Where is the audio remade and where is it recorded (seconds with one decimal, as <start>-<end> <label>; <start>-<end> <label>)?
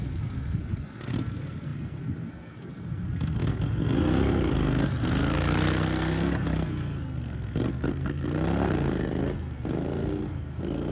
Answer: 0.0-10.9 remade